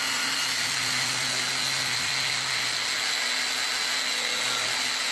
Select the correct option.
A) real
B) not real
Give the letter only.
A